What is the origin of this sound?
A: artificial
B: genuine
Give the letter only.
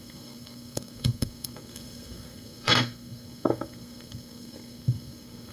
A